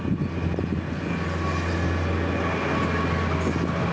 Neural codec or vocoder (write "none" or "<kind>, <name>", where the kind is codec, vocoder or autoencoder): none